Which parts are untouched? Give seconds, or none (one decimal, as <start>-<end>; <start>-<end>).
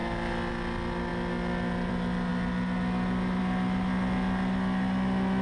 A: 0.0-5.4